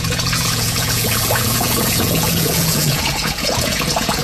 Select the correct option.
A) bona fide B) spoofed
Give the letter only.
B